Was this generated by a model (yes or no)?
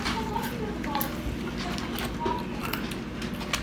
no